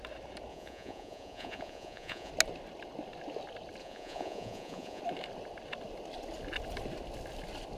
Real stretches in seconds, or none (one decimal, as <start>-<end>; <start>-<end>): 0.0-0.5; 2.3-3.8; 5.0-7.8